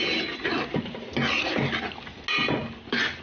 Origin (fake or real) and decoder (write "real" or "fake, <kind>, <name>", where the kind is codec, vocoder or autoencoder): real